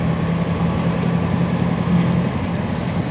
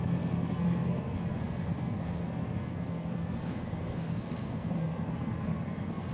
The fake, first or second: second